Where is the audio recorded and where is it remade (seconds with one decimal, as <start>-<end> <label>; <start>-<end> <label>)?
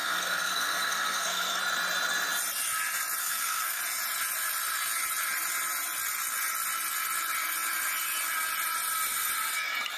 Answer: 0.0-1.6 remade; 1.6-3.2 recorded; 3.2-3.8 remade; 3.8-10.0 recorded